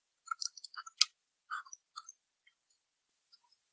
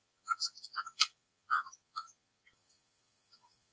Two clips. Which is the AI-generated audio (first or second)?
second